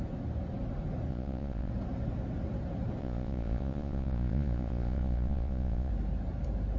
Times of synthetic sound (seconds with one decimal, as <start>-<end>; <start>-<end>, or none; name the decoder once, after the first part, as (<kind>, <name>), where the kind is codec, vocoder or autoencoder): 1.1-1.7 (vocoder, Vocos); 3.0-5.9